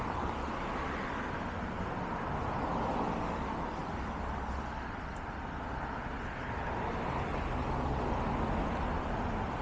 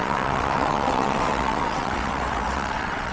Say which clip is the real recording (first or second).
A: first